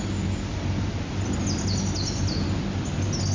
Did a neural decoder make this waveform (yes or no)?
no